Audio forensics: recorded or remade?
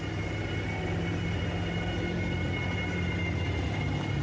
recorded